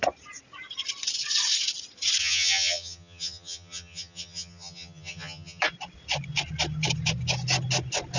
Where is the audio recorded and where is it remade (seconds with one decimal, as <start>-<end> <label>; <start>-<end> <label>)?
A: 0.0-2.2 recorded; 2.2-5.6 remade; 5.6-8.2 recorded